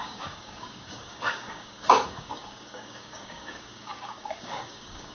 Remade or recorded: remade